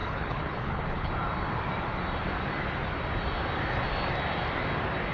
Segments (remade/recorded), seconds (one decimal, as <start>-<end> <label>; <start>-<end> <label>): 0.0-1.1 remade; 1.1-5.1 recorded